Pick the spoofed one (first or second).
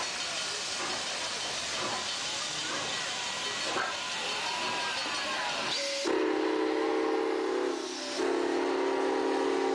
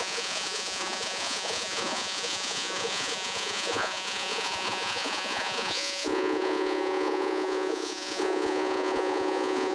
second